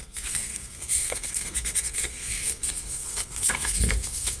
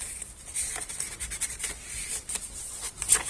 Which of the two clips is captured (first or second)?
second